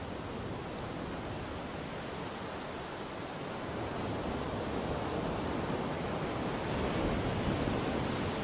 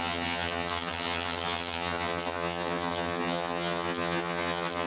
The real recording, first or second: first